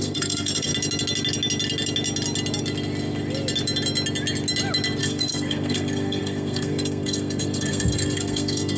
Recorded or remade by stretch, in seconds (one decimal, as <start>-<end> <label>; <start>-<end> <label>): 0.0-0.7 remade; 0.7-5.0 recorded; 5.0-8.8 remade